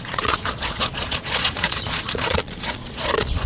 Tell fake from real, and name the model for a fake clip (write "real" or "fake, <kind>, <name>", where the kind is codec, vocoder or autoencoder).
fake, vocoder, Vocos